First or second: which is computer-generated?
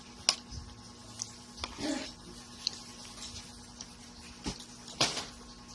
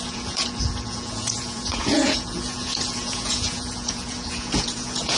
second